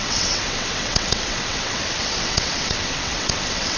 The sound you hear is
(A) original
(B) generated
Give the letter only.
B